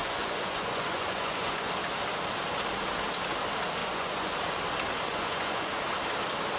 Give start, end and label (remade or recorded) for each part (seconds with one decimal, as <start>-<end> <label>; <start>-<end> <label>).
0.0-1.7 remade; 1.7-3.8 recorded; 3.8-4.3 remade; 4.3-5.1 recorded; 5.1-5.7 remade; 5.7-6.6 recorded